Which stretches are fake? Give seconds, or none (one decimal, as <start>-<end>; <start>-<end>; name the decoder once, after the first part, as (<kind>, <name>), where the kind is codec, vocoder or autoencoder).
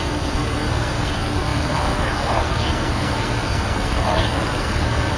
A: 0.0-5.2 (codec, SNAC)